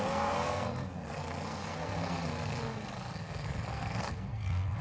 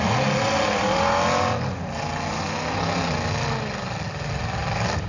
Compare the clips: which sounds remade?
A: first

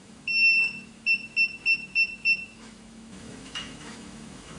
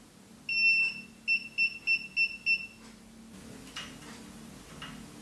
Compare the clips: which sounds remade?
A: first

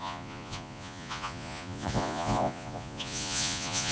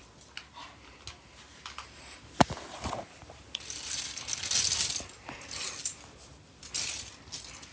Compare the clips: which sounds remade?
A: first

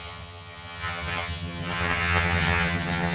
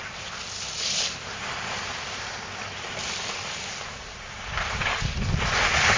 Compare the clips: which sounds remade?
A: first